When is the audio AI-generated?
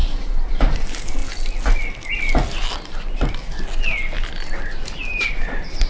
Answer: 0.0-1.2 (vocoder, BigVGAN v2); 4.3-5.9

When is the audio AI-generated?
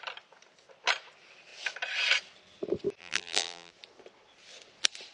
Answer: 3.0-3.7 (vocoder, BigVGAN v2)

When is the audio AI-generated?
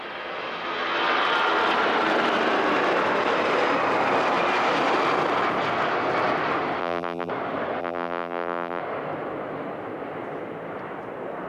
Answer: 6.8-7.3 (vocoder, BigVGAN v2); 7.8-8.8